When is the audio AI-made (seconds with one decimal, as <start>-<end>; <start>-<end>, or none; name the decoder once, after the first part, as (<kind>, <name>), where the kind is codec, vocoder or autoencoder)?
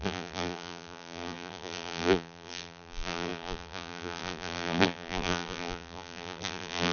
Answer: 0.0-6.9 (vocoder, BigVGAN v2)